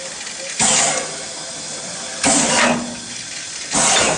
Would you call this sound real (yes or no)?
yes